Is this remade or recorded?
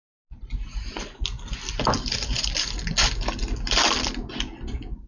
recorded